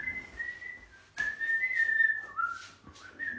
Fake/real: real